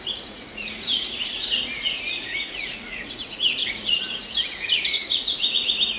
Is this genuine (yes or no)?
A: no